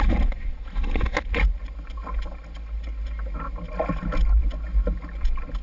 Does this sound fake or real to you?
real